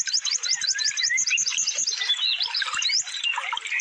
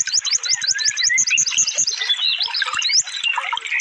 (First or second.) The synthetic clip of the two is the first